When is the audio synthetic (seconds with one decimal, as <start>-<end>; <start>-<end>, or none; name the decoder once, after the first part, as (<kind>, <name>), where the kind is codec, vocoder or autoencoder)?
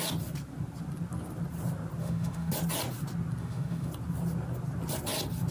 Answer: 2.0-2.5 (autoencoder, DAC-VAE); 3.4-3.9